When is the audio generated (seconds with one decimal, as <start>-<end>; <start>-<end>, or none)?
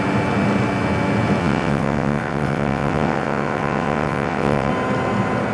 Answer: 1.4-4.7